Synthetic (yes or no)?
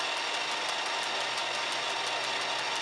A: no